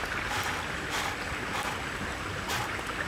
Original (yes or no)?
yes